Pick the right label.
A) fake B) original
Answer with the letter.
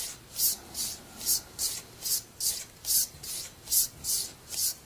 B